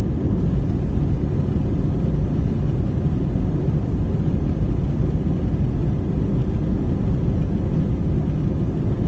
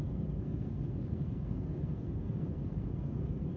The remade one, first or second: second